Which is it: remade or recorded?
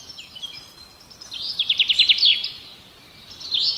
recorded